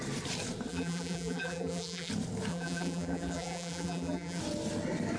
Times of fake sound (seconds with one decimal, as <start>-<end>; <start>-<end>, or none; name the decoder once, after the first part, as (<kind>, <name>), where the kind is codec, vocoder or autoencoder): 0.7-2.1 (vocoder, BigVGAN v2); 2.5-4.4